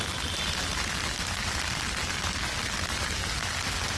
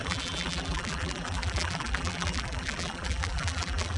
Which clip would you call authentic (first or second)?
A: first